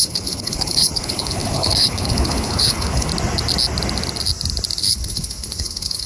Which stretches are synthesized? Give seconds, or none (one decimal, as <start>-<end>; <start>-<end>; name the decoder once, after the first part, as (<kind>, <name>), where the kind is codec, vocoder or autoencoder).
0.0-3.1 (codec, HILCodec); 4.8-6.1